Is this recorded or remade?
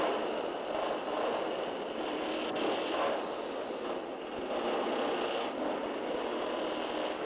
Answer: recorded